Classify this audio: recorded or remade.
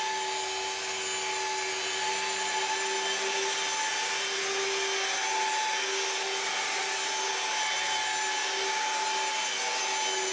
recorded